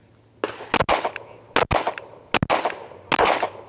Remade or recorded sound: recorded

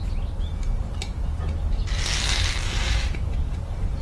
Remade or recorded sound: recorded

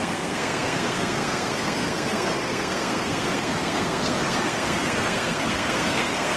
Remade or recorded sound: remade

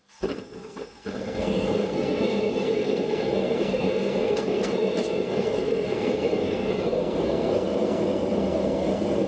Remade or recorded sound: remade